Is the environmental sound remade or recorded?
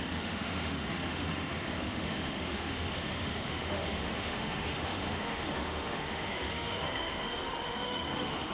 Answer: remade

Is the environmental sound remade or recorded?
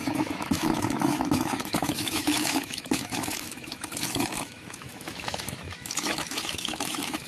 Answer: remade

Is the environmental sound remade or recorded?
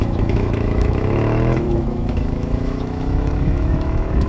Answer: remade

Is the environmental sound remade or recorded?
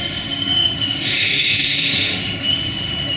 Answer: remade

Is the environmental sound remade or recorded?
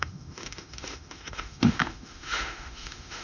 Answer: remade